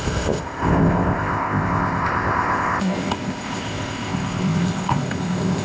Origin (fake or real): fake